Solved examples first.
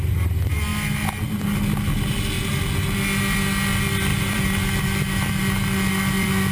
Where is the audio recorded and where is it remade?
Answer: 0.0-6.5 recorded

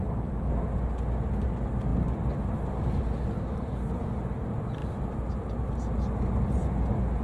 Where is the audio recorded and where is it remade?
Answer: 0.0-7.2 recorded

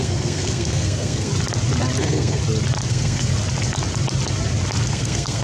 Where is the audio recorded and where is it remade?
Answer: 0.0-1.3 remade; 1.3-2.0 recorded; 2.0-2.4 remade; 2.4-2.9 recorded; 2.9-3.3 remade; 3.3-4.9 recorded; 4.9-5.4 remade

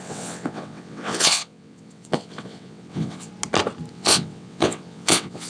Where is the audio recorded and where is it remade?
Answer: 0.0-3.3 remade; 3.3-3.9 recorded; 3.9-5.5 remade

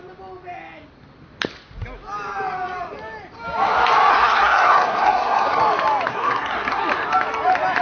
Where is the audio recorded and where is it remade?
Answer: 0.0-4.1 recorded; 4.1-5.6 remade; 5.6-6.1 recorded; 6.1-6.8 remade; 6.8-7.8 recorded

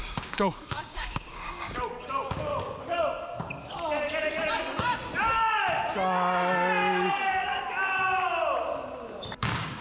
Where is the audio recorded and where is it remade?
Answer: 0.0-2.5 remade; 2.5-4.5 recorded; 4.5-4.9 remade; 4.9-9.4 recorded; 9.4-9.8 remade

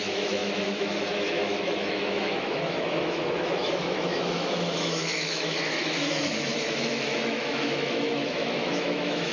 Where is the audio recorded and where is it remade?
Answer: 0.0-9.3 remade

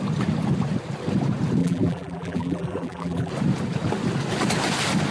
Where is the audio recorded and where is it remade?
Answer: 0.0-1.6 recorded; 1.6-3.3 remade; 3.3-5.1 recorded